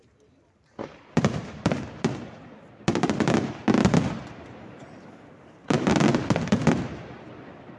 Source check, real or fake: fake